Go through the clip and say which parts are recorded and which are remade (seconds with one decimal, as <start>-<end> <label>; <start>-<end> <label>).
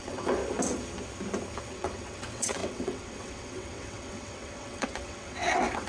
0.0-0.4 remade; 0.4-1.7 recorded; 1.7-5.9 remade